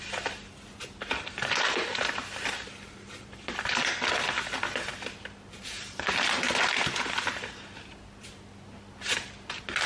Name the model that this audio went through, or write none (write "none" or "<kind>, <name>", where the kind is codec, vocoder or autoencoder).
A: none